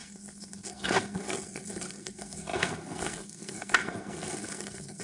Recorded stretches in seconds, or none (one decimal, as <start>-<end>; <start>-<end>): none